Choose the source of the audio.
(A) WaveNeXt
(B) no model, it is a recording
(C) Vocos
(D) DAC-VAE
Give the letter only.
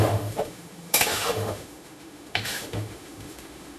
D